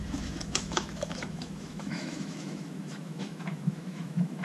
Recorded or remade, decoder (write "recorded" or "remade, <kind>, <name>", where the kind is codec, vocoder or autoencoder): remade, autoencoder, DAC-VAE